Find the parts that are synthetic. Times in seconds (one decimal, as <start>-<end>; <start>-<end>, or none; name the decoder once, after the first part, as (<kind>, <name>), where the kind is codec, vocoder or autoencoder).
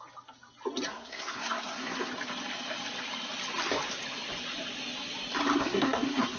0.9-2.1 (codec, SNAC); 5.6-6.4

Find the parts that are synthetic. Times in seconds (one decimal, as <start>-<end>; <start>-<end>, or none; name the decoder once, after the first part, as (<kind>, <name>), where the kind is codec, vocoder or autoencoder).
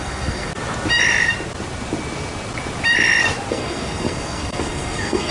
0.0-0.5 (codec, SNAC); 3.5-5.3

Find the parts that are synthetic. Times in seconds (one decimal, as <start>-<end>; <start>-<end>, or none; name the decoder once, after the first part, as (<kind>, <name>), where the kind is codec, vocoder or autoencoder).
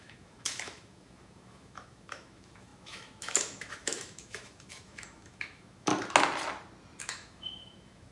0.0-5.9 (autoencoder, DAC-VAE); 7.0-8.1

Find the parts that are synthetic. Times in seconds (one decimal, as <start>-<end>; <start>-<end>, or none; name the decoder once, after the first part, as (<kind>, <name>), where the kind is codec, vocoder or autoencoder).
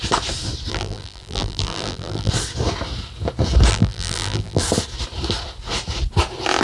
0.7-2.3 (vocoder, BigVGAN v2); 3.7-4.6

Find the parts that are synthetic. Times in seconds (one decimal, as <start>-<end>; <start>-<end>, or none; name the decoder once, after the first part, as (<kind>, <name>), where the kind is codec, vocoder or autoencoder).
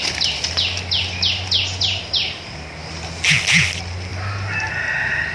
none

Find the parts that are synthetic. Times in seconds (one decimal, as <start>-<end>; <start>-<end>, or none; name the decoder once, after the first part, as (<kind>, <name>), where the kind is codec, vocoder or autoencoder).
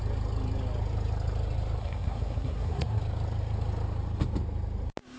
1.8-3.0 (codec, SNAC)